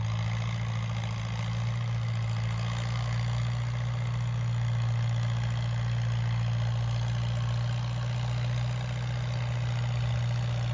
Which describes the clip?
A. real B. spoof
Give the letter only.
A